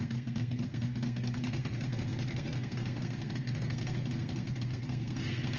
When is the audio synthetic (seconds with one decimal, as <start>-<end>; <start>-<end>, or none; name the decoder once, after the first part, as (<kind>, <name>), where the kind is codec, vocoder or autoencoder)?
0.0-5.6 (codec, SNAC)

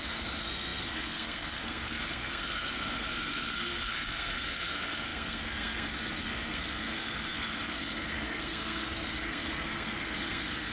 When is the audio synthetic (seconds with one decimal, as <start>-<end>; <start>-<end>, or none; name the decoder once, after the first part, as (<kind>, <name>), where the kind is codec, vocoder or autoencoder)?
0.0-10.7 (codec, SNAC)

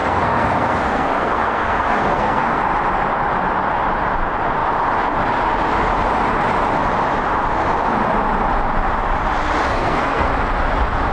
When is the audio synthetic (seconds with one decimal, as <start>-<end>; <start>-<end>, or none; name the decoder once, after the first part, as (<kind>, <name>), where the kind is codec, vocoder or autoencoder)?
0.0-2.6 (codec, SNAC); 9.6-10.3

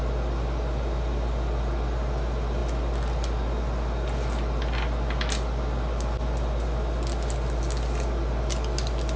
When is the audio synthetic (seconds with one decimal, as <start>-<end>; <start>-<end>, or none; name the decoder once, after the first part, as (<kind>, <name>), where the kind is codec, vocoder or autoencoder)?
none

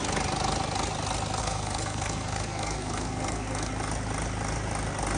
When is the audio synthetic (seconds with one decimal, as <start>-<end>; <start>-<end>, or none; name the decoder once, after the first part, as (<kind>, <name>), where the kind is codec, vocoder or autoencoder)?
1.4-3.7 (codec, SNAC)

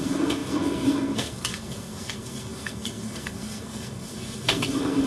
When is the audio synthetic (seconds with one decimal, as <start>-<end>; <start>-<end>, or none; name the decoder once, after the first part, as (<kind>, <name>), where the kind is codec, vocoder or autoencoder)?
0.0-5.1 (codec, SNAC)